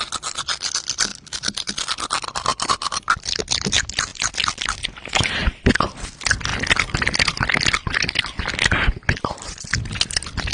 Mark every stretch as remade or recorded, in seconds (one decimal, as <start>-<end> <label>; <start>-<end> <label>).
0.0-1.1 recorded; 1.1-1.7 remade; 1.7-2.5 recorded; 2.5-3.4 remade; 3.4-4.1 recorded; 4.1-5.8 remade; 5.8-10.5 recorded